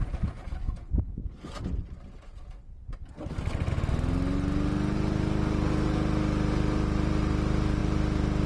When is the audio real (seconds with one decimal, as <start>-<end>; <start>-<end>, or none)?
0.0-8.5